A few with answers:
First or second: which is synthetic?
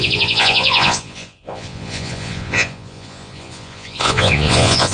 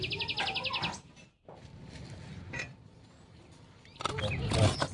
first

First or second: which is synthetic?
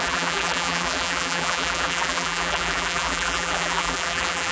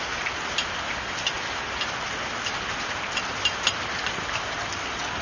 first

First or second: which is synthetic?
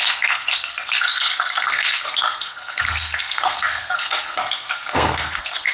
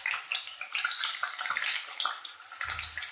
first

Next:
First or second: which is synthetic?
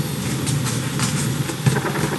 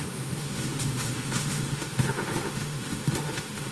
second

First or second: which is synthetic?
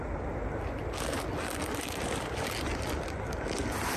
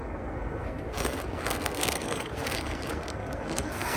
second